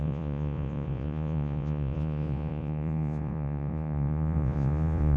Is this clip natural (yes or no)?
no